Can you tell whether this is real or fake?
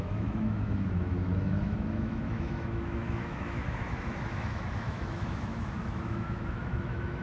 fake